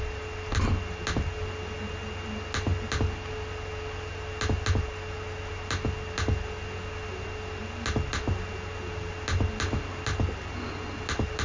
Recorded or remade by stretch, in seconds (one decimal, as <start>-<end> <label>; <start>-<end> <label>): 0.0-11.4 recorded